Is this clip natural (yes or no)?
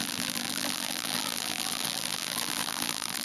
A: no